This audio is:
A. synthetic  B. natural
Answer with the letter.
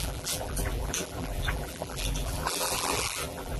A